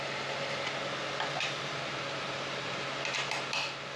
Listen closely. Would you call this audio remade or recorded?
recorded